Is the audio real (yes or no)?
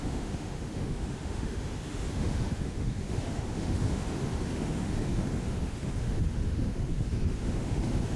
no